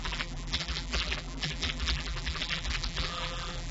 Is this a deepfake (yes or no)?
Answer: yes